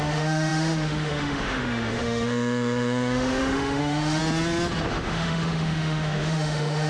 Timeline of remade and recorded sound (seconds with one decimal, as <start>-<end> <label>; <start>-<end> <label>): 0.0-4.2 remade; 4.2-4.9 recorded; 4.9-6.9 remade